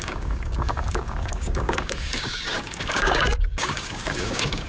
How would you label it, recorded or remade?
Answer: remade